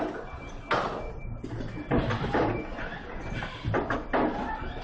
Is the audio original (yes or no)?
yes